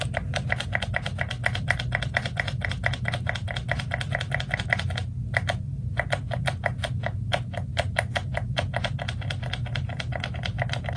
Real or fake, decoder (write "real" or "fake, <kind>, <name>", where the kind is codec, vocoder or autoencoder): real